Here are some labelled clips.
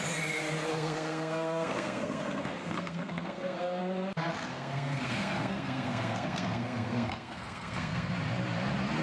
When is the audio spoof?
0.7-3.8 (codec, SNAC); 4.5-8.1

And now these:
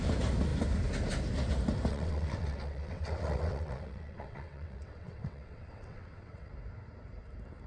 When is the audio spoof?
1.9-6.5 (vocoder, WaveNeXt)

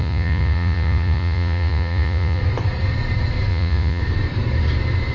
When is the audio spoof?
0.0-2.4 (vocoder, Vocos); 3.5-4.0

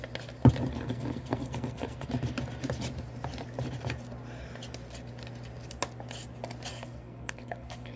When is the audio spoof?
0.7-2.1 (codec, SNAC); 6.7-8.0

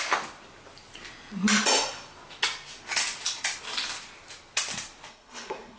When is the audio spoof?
5.1-5.8 (codec, SNAC)

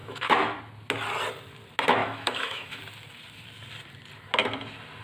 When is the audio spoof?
0.0-0.6 (autoencoder, DAC-VAE); 2.0-2.8

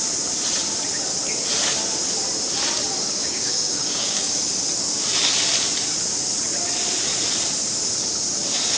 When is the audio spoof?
3.2-4.5 (codec, DAC)